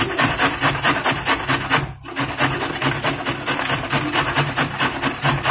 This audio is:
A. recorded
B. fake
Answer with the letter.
A